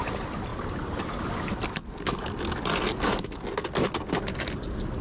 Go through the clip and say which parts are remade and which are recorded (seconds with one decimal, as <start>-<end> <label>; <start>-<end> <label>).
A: 0.0-5.0 recorded